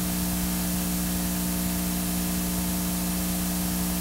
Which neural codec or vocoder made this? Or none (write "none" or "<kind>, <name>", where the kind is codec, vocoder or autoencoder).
none